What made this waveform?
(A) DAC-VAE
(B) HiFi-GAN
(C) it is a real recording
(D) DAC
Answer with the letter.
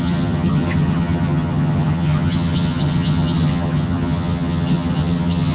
B